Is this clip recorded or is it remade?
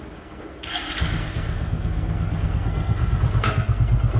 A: remade